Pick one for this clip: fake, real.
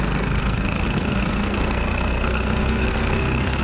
fake